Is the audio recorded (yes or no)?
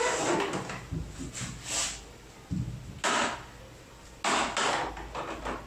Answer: yes